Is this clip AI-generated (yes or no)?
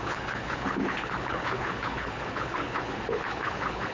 yes